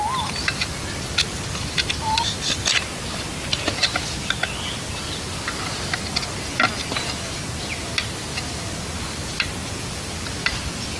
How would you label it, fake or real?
real